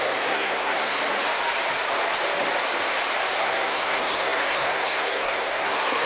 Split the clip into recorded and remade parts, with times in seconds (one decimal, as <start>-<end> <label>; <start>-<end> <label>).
0.0-1.0 remade; 1.0-3.4 recorded; 3.4-6.1 remade

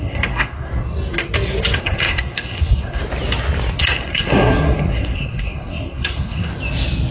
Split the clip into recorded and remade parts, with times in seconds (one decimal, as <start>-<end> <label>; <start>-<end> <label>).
0.0-0.7 remade; 0.7-1.8 recorded; 1.8-3.0 remade; 3.0-3.8 recorded; 3.8-6.5 remade; 6.5-7.1 recorded